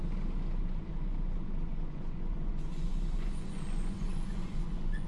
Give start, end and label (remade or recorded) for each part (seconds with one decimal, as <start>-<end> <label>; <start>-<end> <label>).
0.0-0.6 recorded; 0.6-5.1 remade